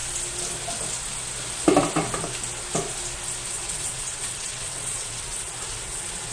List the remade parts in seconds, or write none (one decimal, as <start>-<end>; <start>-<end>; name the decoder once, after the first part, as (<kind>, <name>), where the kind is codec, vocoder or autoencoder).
3.5-6.3 (vocoder, WaveNeXt)